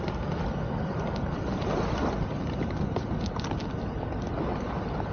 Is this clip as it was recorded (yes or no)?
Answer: yes